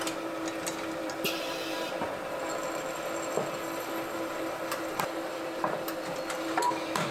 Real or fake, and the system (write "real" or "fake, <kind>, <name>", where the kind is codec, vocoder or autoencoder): real